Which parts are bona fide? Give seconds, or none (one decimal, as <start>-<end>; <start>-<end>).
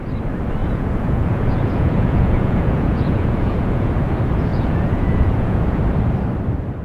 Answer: 0.0-0.6; 3.9-4.5; 5.8-6.8